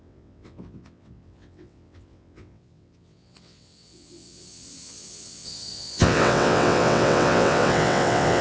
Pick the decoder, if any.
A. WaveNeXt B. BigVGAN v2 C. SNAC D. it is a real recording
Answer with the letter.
A